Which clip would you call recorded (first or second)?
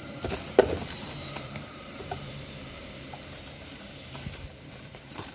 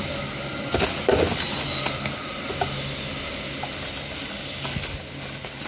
second